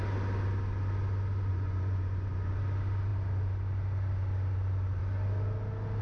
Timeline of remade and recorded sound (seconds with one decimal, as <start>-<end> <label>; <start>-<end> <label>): 0.0-1.5 recorded; 1.5-2.5 remade; 2.5-6.0 recorded